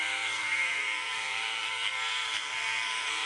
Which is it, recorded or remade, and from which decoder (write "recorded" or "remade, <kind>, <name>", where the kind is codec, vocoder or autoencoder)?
remade, codec, SNAC